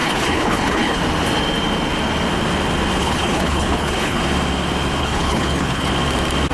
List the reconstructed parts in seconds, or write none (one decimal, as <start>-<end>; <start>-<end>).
0.0-1.0; 3.0-4.2; 5.0-5.9